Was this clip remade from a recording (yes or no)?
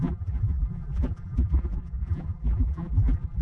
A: yes